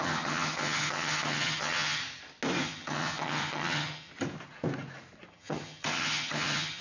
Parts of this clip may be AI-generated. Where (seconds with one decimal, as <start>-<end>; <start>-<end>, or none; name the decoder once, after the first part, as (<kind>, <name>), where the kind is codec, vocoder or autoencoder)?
0.0-2.0 (vocoder, HiFi-GAN); 2.6-4.1; 5.3-6.8